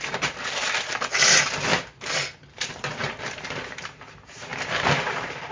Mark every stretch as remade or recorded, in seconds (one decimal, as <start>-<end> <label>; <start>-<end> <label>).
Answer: 0.0-1.7 remade; 1.7-2.4 recorded; 2.4-5.5 remade